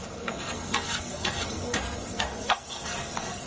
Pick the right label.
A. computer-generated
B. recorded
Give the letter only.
A